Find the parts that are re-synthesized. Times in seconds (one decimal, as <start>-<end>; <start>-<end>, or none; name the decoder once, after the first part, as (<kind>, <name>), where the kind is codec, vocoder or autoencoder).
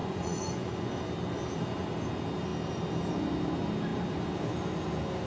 0.0-0.9 (vocoder, Vocos)